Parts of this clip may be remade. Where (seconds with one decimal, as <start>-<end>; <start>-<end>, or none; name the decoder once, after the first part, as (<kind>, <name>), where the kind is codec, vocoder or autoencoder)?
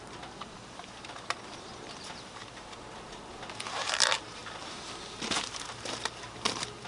0.0-2.4 (vocoder, BigVGAN v2); 3.7-6.9